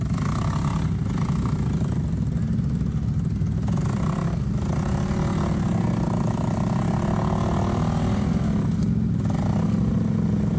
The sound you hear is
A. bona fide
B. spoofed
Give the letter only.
A